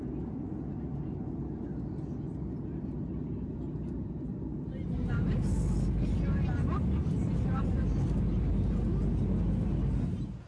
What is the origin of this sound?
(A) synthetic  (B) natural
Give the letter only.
B